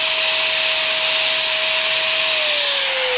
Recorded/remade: recorded